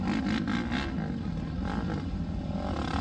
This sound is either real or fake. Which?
real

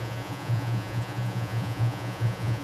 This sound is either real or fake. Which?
fake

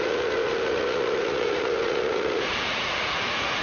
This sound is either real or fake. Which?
fake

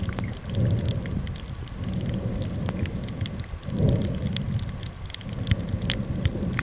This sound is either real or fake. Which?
real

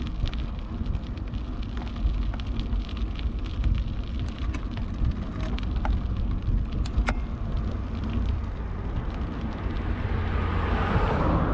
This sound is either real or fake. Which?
real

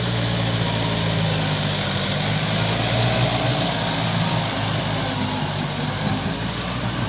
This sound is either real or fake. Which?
real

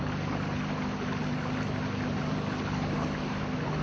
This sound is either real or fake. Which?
real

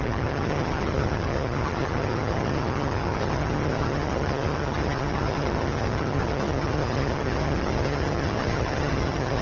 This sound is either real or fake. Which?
fake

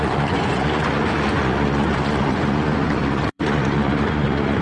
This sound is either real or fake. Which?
fake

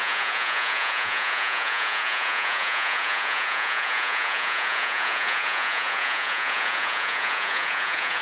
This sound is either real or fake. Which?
fake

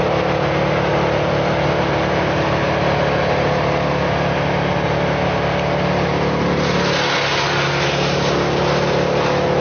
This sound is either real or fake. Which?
real